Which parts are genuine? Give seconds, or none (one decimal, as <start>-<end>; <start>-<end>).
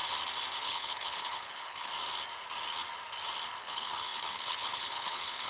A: 0.0-0.6; 1.9-3.6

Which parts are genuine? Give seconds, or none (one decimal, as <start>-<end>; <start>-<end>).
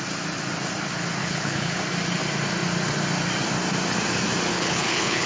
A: 0.0-1.2; 1.8-4.5